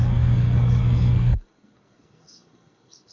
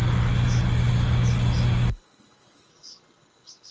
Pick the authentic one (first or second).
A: second